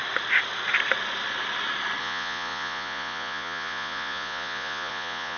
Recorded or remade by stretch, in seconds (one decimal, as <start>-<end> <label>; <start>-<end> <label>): 0.0-2.0 recorded; 2.0-5.4 remade